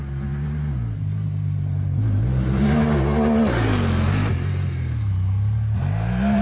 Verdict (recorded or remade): recorded